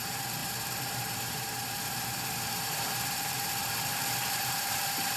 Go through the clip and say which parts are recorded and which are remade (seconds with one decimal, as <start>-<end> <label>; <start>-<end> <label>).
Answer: 0.0-5.2 remade